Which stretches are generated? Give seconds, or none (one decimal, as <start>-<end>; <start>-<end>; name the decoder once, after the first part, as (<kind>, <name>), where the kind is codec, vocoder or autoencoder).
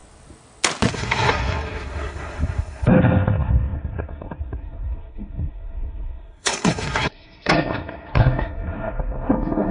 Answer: 0.9-9.7 (codec, SNAC)